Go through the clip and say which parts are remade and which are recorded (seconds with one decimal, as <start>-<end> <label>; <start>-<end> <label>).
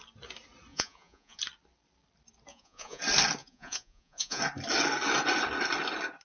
0.0-0.7 recorded; 0.7-1.4 remade; 1.4-2.5 recorded; 2.5-3.0 remade; 3.0-3.4 recorded; 3.4-4.4 remade; 4.4-6.2 recorded